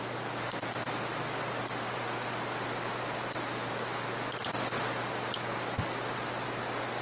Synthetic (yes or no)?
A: no